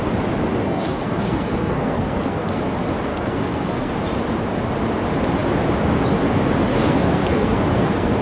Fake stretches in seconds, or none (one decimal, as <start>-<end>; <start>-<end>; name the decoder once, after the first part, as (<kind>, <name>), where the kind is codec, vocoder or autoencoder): 0.6-2.6 (codec, SNAC); 3.1-3.9; 6.7-8.2